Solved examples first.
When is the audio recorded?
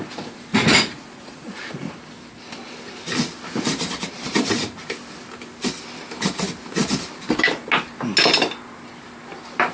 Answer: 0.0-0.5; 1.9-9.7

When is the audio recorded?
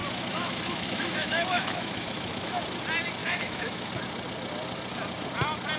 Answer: 2.6-3.2; 3.9-5.8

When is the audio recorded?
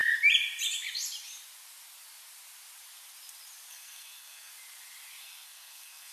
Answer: 0.0-3.7; 4.5-5.2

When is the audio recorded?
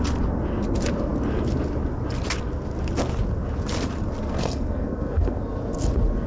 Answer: 0.0-4.2; 5.4-6.3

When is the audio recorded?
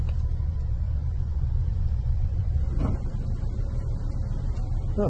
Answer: 0.0-0.4; 3.1-5.1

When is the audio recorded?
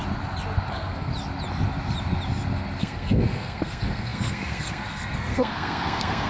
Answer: 0.0-0.7; 1.1-2.8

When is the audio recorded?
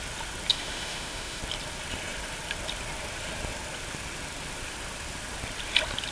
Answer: 0.0-0.5; 1.4-6.1